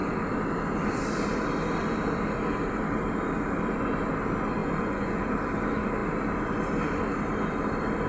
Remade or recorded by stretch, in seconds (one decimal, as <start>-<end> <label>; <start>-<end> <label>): 0.0-4.6 recorded; 4.6-5.2 remade; 5.2-8.1 recorded